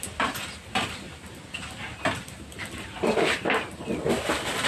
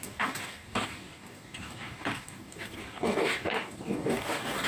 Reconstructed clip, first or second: second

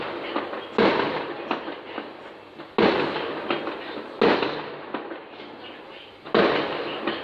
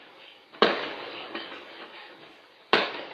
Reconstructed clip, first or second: second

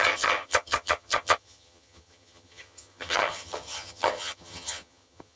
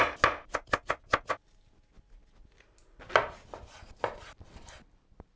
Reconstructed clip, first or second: first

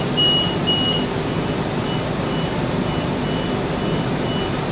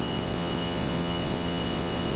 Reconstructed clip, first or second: second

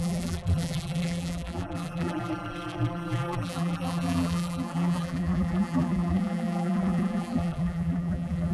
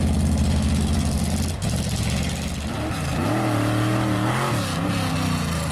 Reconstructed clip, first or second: first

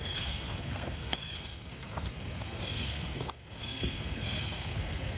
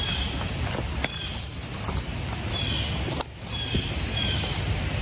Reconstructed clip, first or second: first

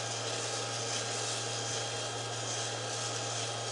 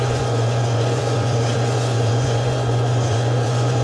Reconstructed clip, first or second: second